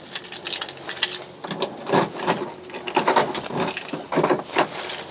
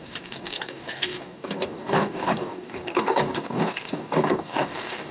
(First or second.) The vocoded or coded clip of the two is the second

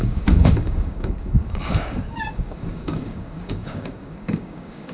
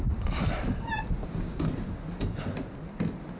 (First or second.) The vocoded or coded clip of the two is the first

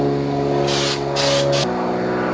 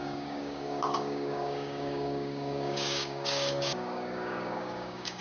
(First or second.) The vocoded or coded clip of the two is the second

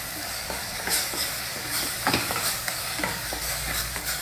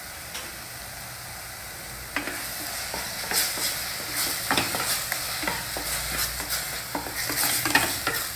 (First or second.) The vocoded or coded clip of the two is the first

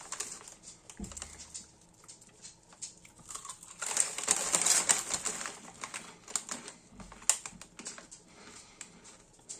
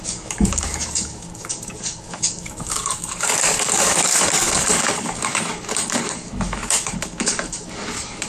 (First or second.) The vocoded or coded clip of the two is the second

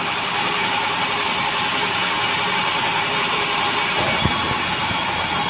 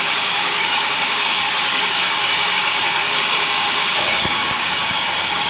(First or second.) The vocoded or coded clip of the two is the second